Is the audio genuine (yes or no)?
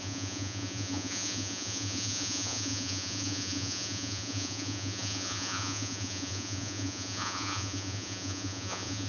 no